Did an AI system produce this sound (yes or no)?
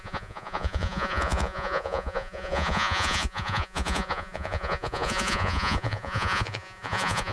yes